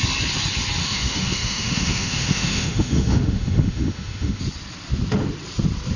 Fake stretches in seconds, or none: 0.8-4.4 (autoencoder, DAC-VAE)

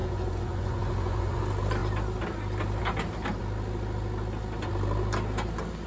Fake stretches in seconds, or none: 0.0-1.4 (vocoder, Vocos)